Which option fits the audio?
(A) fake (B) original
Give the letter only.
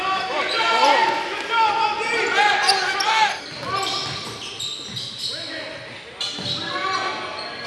B